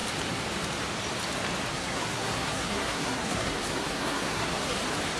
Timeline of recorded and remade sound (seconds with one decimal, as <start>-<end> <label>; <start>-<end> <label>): 0.0-1.7 recorded; 1.7-4.8 remade; 4.8-5.2 recorded